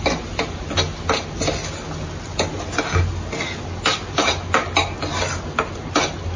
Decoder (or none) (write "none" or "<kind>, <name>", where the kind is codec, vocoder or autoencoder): none